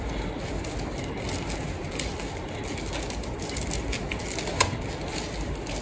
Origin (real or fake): real